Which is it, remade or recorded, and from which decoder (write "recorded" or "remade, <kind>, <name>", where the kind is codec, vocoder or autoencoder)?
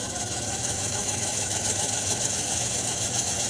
remade, autoencoder, DAC-VAE